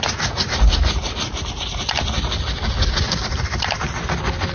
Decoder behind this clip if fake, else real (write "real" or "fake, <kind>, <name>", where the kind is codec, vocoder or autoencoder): real